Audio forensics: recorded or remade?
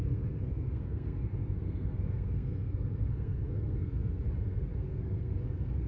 remade